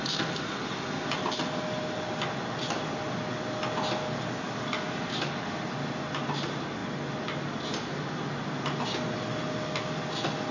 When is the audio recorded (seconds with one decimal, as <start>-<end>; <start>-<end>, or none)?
0.0-10.5